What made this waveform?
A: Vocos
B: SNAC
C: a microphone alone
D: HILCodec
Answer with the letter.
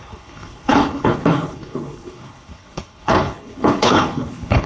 D